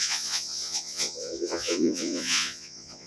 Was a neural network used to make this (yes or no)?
yes